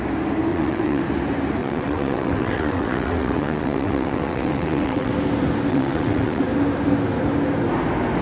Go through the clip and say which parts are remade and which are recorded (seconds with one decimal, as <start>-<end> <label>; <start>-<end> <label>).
0.0-0.5 recorded; 0.5-1.0 remade; 1.0-1.6 recorded; 1.6-5.1 remade; 5.1-5.7 recorded; 5.7-6.4 remade; 6.4-8.2 recorded